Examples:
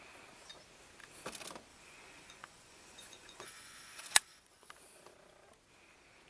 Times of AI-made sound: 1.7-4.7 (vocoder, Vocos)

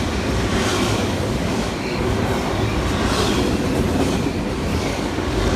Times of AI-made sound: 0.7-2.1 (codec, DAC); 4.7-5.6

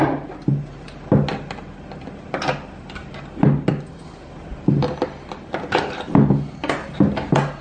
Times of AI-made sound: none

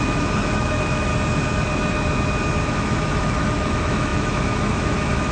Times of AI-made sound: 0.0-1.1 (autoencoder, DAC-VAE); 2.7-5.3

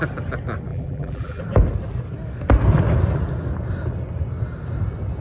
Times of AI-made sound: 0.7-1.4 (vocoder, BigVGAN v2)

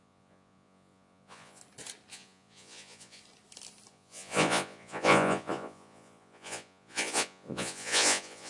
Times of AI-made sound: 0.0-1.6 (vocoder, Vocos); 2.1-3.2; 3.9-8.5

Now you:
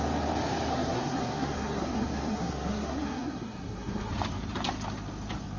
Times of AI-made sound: 0.7-4.1 (codec, SNAC)